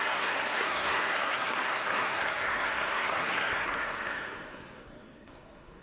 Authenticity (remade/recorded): remade